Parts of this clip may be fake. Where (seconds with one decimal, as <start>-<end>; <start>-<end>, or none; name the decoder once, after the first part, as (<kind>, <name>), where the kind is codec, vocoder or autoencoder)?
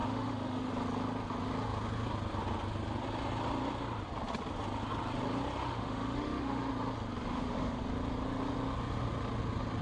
0.0-0.7 (autoencoder, DAC-VAE); 5.6-6.7; 7.3-7.8